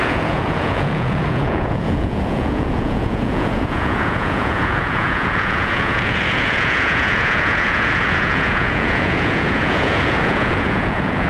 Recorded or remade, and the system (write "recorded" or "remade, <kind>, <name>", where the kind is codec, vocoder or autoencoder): remade, vocoder, Vocos